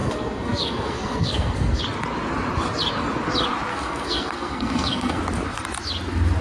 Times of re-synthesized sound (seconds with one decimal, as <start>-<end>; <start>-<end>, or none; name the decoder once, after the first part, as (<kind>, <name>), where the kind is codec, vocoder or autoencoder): 0.0-1.8 (codec, SNAC); 3.7-5.2